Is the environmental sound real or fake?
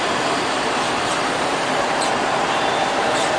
fake